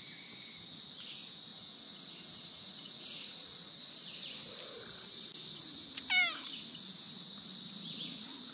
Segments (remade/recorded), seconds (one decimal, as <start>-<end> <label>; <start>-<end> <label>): 0.0-1.5 recorded; 1.5-3.7 remade; 3.7-8.5 recorded